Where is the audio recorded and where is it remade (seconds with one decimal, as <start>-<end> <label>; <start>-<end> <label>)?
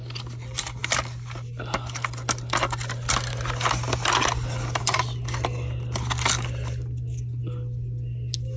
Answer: 0.0-8.6 recorded